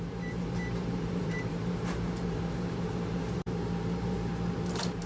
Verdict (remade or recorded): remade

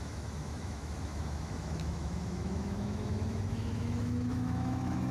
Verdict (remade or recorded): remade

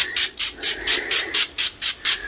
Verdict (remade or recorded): recorded